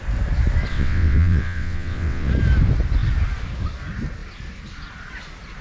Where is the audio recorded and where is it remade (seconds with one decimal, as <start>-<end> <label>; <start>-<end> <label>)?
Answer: 0.0-0.7 recorded; 0.7-2.3 remade; 2.3-5.6 recorded